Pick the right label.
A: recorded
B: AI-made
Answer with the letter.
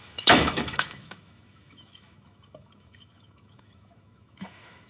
B